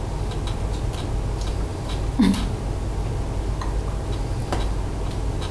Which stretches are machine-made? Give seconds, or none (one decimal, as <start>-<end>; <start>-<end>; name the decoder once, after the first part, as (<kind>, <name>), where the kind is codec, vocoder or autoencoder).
none